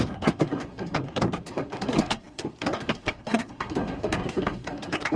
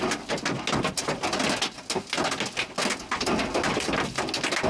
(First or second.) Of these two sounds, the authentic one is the second